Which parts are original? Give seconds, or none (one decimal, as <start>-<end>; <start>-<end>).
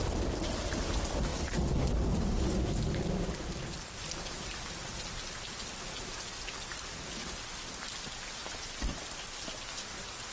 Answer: 0.0-4.9; 5.5-10.3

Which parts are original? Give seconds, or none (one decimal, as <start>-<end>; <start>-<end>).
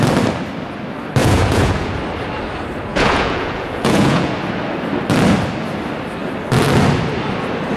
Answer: 0.0-1.2; 1.9-2.9; 4.3-7.8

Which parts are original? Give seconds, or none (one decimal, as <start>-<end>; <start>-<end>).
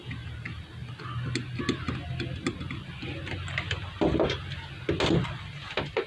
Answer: 0.0-6.1